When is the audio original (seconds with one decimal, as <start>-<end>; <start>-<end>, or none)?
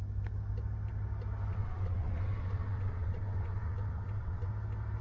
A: 0.0-1.5; 4.5-5.0